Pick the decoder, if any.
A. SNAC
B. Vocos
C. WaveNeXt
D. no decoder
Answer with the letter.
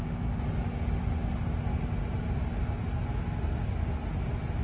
D